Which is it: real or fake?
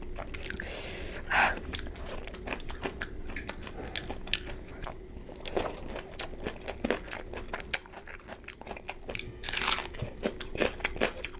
real